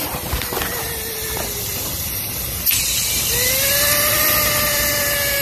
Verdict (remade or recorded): recorded